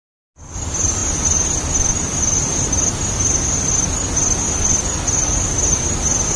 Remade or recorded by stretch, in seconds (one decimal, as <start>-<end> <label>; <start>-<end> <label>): 0.0-6.4 recorded